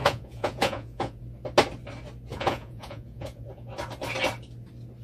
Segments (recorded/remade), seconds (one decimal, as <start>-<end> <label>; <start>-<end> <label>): 0.0-1.2 remade; 1.2-2.3 recorded; 2.3-3.7 remade; 3.7-5.0 recorded